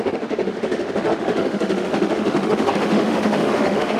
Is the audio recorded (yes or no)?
no